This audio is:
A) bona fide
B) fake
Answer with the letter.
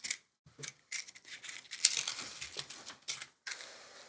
B